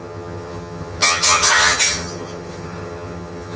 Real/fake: fake